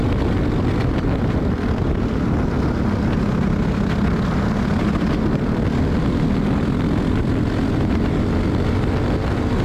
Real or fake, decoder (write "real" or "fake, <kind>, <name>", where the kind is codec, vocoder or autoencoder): real